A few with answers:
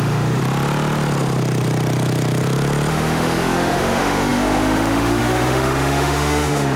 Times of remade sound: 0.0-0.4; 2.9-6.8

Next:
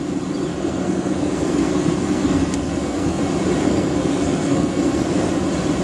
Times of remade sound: 0.5-3.2; 3.6-5.3

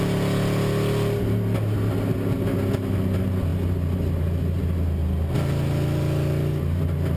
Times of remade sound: none

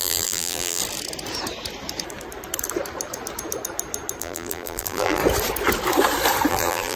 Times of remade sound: 0.0-0.8; 4.2-5.2; 6.5-7.0

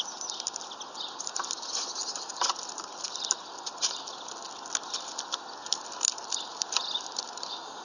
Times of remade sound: none